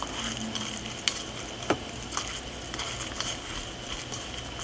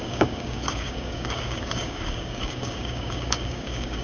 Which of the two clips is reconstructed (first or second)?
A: second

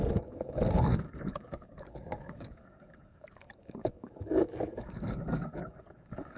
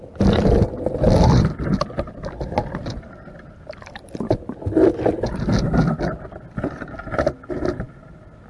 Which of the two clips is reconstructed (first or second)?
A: first